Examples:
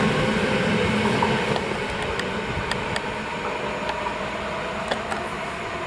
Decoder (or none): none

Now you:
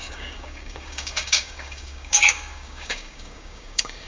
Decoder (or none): codec, DAC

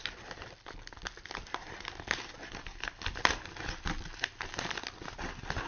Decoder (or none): none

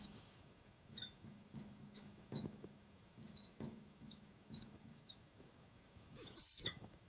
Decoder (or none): autoencoder, DAC-VAE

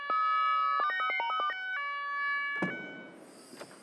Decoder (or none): none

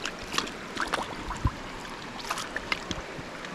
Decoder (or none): none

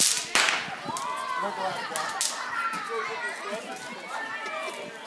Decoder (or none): none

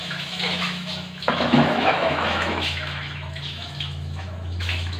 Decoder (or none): autoencoder, DAC-VAE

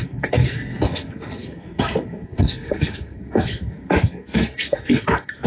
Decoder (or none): codec, SNAC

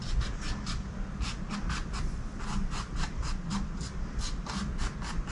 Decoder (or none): none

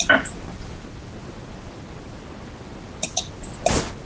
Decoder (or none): none